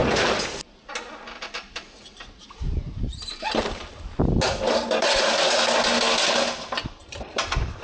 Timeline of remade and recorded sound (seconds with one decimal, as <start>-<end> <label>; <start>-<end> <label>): 0.0-4.7 remade; 4.7-7.0 recorded; 7.0-7.8 remade